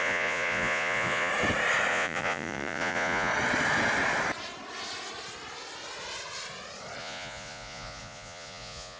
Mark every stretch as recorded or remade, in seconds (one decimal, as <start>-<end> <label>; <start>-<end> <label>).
0.0-1.3 remade; 1.3-1.9 recorded; 1.9-3.3 remade; 3.3-7.0 recorded; 7.0-9.0 remade